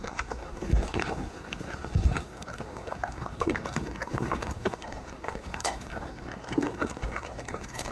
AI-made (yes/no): yes